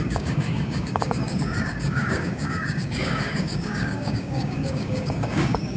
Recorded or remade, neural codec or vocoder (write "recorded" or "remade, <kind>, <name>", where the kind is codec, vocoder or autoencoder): remade, codec, DAC